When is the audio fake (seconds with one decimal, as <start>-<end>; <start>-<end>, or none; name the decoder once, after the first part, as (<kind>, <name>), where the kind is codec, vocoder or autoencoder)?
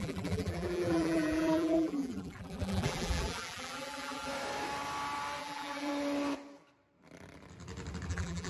0.0-4.3 (vocoder, BigVGAN v2); 5.4-5.9; 8.1-8.5